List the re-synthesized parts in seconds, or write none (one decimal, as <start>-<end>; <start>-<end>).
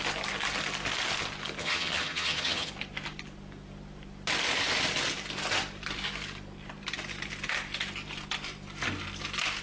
1.6-2.7